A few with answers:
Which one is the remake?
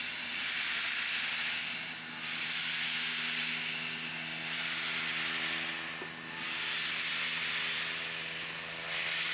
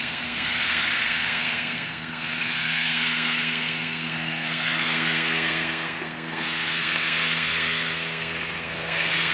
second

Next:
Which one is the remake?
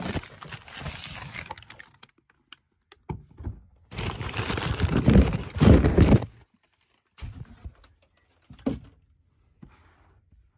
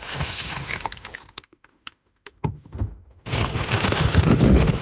second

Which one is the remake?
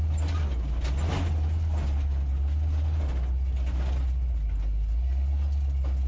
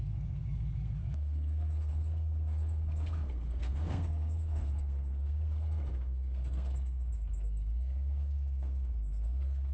second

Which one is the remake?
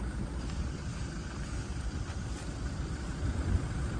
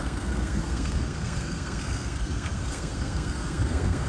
second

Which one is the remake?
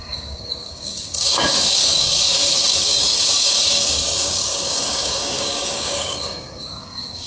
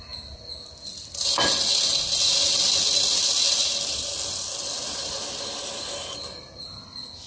first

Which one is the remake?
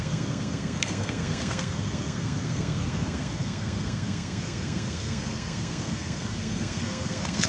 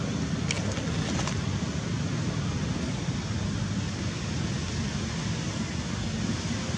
first